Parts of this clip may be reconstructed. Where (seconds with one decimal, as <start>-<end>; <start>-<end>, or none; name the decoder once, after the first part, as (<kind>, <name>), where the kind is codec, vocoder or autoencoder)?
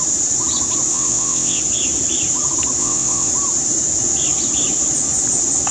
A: 0.9-1.6 (vocoder, WaveNeXt); 2.8-3.3